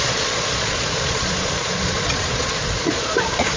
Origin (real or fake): fake